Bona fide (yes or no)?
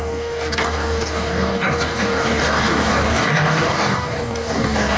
no